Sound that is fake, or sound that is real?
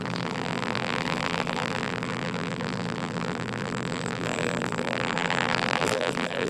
fake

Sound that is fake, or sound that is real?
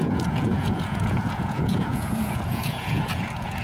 fake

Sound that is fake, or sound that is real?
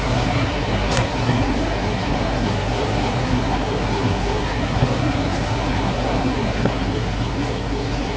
fake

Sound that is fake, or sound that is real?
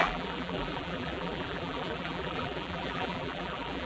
fake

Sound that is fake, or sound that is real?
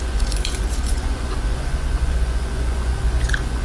fake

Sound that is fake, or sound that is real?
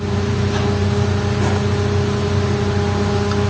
real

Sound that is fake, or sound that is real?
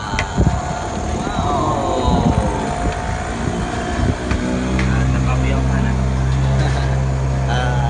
real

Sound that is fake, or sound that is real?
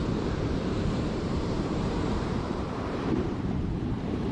fake